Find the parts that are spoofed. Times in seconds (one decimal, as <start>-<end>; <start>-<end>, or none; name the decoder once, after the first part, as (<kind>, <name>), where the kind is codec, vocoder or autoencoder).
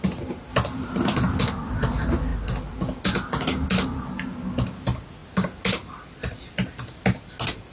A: none